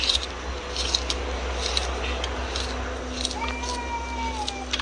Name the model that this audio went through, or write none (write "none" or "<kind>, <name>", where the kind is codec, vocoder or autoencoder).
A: none